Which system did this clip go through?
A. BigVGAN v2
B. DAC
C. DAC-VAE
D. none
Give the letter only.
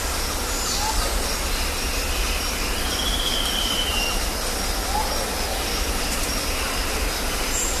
D